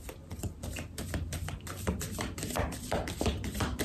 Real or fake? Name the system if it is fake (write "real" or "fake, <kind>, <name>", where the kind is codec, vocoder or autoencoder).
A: fake, vocoder, BigVGAN v2